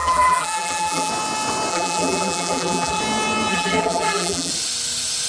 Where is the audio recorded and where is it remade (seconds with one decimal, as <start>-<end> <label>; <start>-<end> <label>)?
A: 0.0-1.1 remade; 1.1-1.7 recorded; 1.7-3.0 remade; 3.0-3.5 recorded; 3.5-4.5 remade; 4.5-5.3 recorded